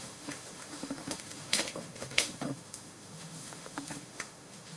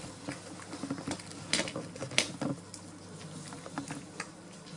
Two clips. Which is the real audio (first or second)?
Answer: second